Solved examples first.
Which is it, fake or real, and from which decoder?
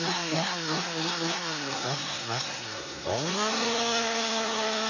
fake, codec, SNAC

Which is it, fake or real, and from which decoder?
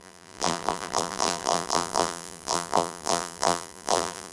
fake, vocoder, BigVGAN v2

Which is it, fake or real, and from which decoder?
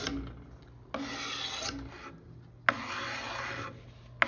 real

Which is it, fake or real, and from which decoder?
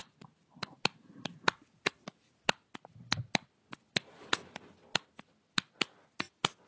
real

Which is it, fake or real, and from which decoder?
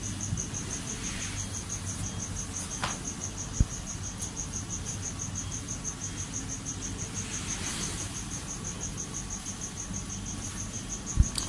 real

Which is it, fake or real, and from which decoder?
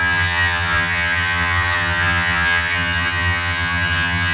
fake, vocoder, HiFi-GAN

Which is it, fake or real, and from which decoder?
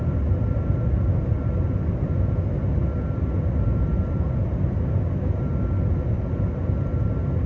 real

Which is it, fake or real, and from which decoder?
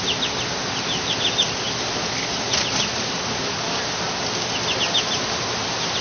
real